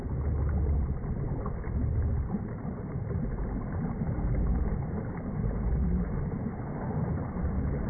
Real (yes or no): yes